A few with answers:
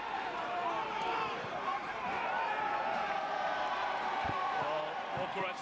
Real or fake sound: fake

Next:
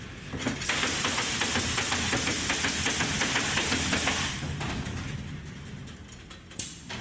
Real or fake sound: real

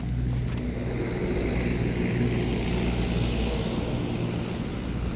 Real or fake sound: real